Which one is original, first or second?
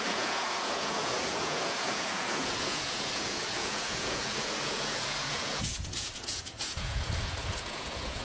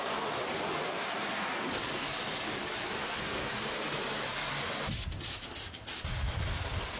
second